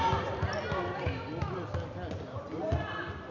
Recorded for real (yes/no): yes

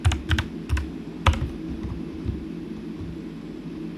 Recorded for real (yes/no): yes